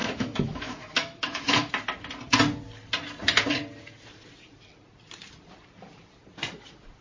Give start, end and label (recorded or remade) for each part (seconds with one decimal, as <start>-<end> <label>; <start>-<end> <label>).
0.0-1.7 remade; 1.7-7.0 recorded